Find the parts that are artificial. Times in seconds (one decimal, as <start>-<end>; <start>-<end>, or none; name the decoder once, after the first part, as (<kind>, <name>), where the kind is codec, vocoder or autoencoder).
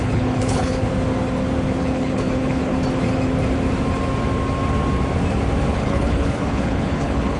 0.0-0.9 (codec, HILCodec); 1.8-2.7; 5.7-7.4